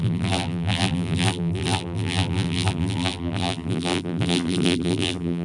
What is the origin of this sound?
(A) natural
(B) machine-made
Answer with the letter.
B